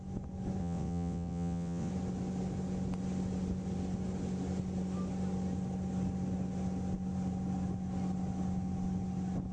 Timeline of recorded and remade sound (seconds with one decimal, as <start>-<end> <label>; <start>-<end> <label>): 0.0-0.6 recorded; 0.6-1.9 remade; 1.9-9.5 recorded